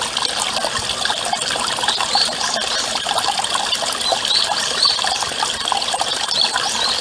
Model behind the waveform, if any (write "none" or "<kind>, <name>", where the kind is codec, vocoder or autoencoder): none